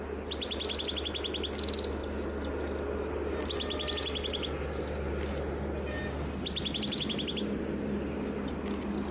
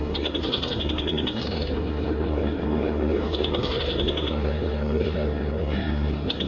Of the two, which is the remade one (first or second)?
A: second